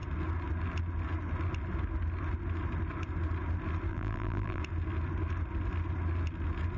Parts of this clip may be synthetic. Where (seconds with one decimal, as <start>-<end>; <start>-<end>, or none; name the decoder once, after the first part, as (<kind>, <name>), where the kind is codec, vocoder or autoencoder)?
3.9-4.6 (vocoder, BigVGAN v2)